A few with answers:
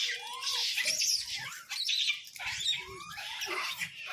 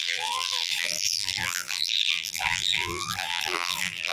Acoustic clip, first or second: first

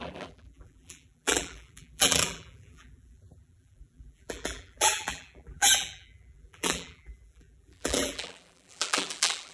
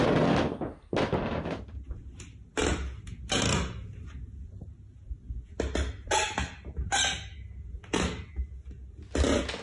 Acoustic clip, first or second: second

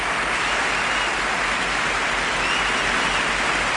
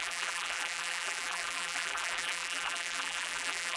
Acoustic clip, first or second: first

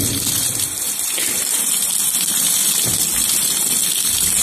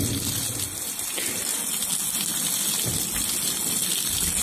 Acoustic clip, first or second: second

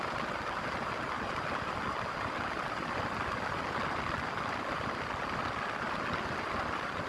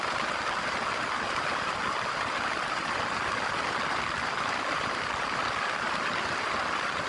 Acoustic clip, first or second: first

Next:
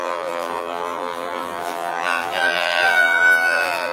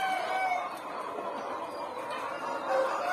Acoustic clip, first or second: second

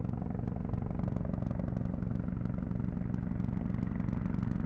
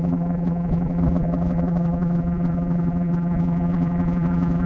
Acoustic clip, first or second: first